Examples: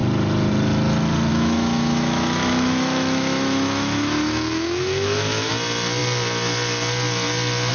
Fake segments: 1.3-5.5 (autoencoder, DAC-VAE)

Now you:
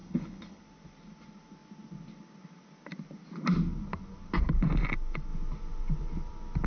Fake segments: 0.0-0.6 (codec, HILCodec)